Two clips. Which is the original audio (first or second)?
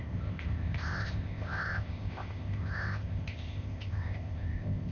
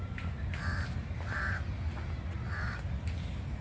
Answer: second